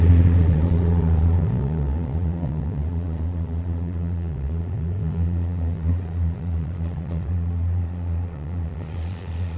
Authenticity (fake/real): fake